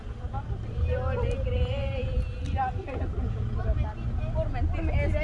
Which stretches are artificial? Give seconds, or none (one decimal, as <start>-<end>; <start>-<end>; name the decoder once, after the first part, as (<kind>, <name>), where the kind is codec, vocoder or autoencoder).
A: none